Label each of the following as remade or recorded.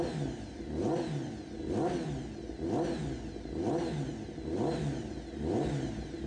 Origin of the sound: recorded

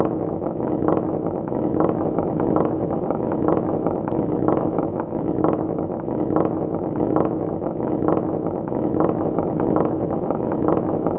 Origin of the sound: remade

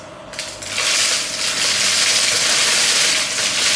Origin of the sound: recorded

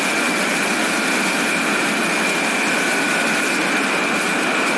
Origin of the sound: recorded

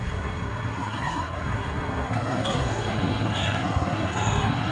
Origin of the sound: remade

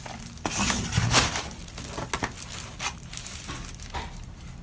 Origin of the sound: recorded